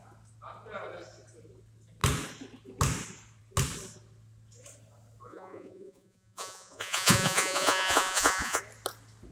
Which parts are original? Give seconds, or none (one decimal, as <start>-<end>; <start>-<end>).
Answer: 0.0-5.3; 8.6-9.3